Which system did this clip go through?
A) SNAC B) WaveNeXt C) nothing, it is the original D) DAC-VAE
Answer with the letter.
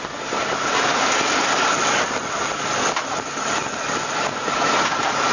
C